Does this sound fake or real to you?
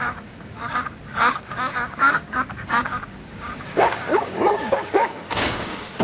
fake